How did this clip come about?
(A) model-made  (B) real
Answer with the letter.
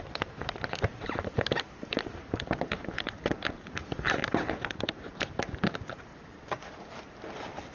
A